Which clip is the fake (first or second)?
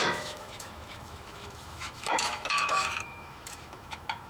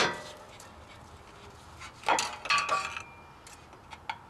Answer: first